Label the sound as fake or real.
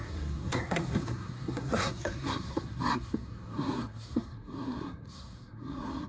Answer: fake